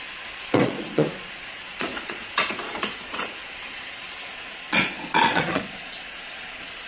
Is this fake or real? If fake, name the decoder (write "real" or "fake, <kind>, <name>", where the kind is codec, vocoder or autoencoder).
fake, vocoder, Vocos